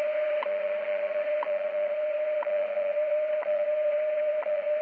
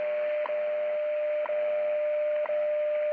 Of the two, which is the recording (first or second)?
second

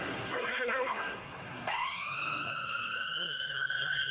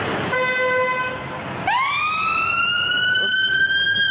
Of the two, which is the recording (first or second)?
second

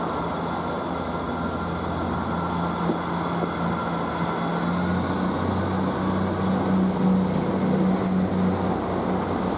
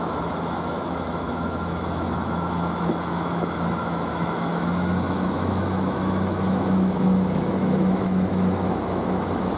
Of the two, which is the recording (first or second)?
first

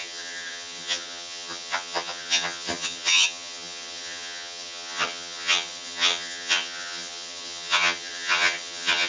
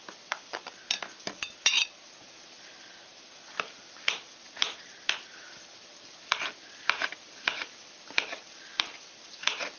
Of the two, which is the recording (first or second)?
second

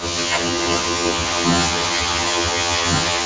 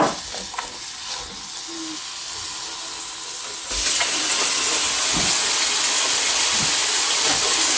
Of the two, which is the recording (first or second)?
second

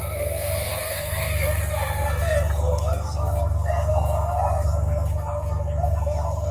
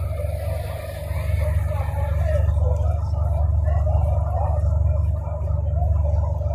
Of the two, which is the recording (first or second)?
second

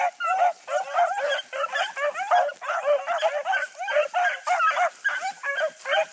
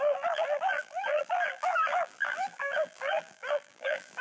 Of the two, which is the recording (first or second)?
first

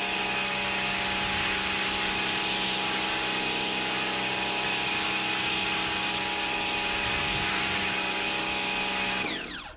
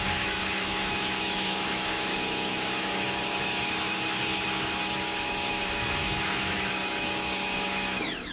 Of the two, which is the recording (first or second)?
first